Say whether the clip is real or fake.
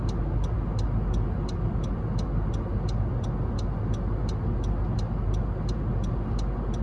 real